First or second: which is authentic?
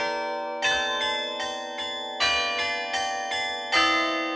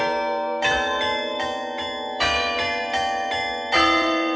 first